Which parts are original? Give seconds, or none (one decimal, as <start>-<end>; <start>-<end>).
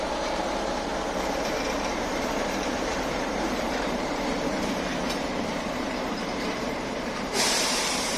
0.9-1.9